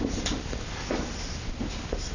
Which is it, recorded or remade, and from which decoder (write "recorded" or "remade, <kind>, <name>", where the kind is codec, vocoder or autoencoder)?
recorded